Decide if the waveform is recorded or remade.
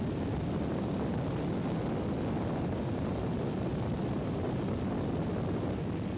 recorded